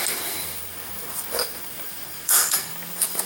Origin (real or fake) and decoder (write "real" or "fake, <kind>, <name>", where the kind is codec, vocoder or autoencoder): fake, codec, SNAC